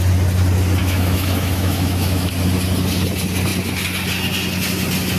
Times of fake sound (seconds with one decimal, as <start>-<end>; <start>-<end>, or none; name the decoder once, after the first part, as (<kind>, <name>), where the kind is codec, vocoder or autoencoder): 0.8-2.3 (autoencoder, DAC-VAE)